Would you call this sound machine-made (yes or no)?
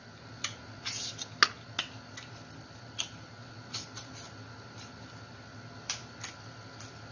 no